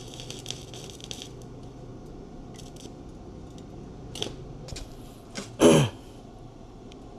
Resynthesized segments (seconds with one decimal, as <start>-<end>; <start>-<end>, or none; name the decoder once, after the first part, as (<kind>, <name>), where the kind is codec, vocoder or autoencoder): none